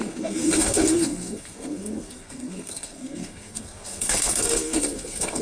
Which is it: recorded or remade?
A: remade